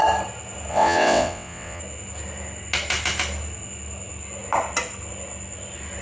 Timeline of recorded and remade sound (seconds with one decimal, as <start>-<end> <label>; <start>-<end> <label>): 0.0-0.7 recorded; 0.7-1.8 remade; 1.8-6.0 recorded